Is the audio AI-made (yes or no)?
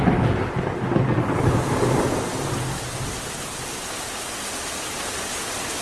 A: no